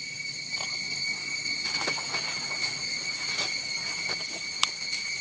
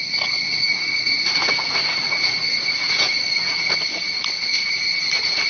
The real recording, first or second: first